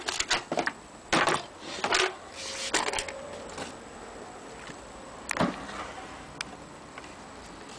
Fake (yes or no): no